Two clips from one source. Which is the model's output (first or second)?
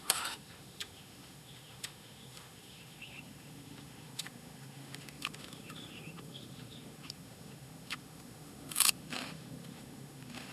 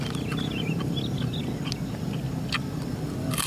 first